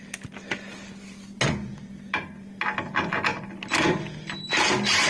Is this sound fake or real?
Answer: real